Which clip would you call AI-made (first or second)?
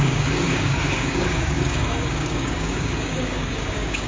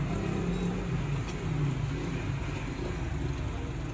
first